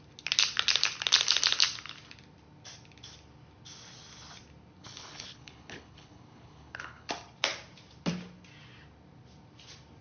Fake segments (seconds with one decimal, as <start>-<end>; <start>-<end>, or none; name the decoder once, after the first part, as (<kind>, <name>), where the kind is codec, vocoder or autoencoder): 4.8-7.1 (codec, HILCodec)